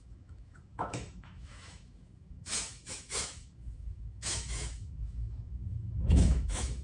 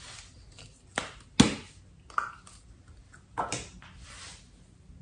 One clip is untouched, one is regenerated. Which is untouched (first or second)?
second